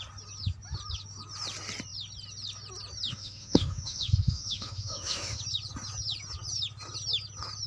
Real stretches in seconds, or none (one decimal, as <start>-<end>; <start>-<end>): 0.0-3.1; 5.4-7.7